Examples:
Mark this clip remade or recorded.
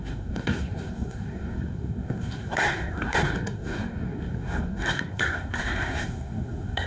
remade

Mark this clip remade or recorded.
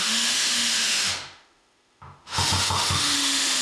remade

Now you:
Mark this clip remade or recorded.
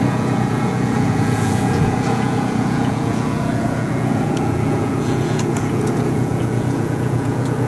remade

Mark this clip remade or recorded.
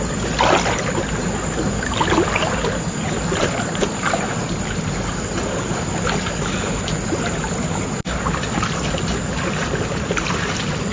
recorded